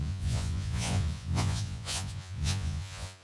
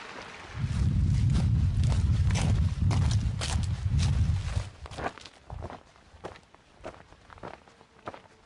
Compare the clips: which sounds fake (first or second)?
first